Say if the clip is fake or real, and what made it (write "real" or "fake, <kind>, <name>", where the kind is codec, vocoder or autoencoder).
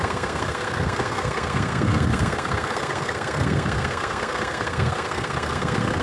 fake, codec, SNAC